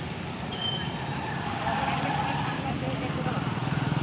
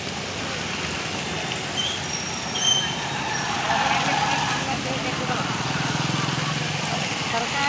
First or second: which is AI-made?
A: first